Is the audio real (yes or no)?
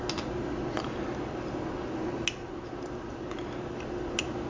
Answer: yes